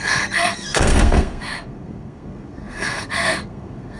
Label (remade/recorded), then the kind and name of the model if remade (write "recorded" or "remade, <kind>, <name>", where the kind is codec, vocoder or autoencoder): remade, codec, SNAC